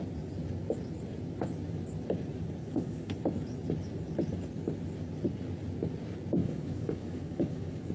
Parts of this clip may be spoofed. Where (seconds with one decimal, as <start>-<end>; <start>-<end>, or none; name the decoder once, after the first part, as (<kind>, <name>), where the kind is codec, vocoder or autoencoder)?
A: 2.6-3.1 (codec, DAC); 6.4-7.9